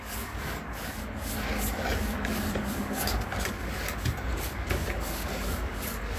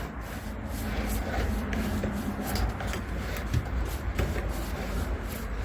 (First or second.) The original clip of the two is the second